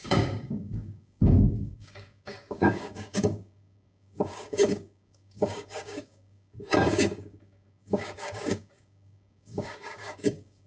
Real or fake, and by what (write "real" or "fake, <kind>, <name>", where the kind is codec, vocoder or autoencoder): fake, codec, DAC